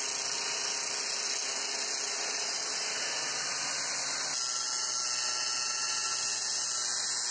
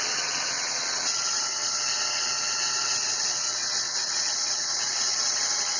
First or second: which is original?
first